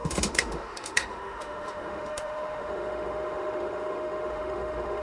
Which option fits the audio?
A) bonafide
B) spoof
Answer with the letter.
B